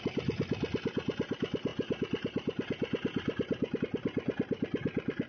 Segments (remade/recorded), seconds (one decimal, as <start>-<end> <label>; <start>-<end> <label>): 0.0-5.3 recorded